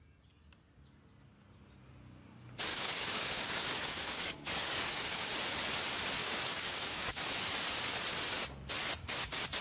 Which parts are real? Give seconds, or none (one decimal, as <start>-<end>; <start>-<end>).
0.0-2.7; 5.3-6.2; 7.3-9.6